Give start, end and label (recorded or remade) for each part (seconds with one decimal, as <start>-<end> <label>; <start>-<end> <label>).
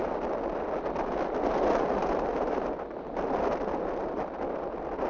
0.0-5.1 recorded